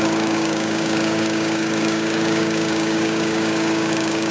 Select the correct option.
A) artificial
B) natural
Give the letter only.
A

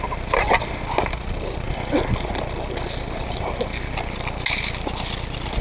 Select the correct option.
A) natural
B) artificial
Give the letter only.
A